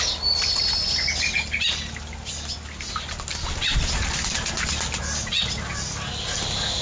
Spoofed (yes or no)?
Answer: no